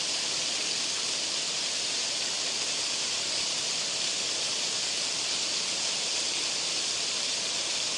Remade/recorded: recorded